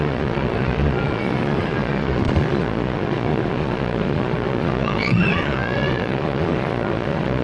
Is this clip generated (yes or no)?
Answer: yes